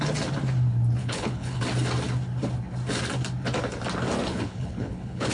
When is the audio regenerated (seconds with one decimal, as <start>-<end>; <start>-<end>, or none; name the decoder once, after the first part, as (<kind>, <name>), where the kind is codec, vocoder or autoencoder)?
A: 1.0-1.6 (codec, HILCodec); 4.3-5.3